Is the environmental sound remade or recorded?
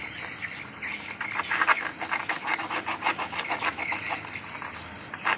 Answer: recorded